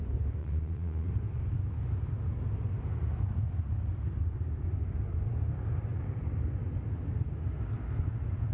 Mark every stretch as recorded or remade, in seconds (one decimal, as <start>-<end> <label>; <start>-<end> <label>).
0.0-0.4 recorded; 0.4-1.1 remade; 1.1-8.5 recorded